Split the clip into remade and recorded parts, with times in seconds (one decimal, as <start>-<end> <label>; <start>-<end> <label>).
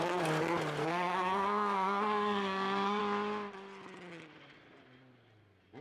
0.0-0.8 recorded; 0.8-3.0 remade; 3.0-5.8 recorded